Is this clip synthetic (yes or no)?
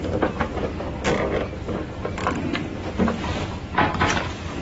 no